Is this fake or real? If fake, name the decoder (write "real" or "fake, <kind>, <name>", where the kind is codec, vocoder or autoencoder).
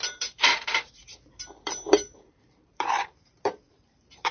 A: fake, vocoder, BigVGAN v2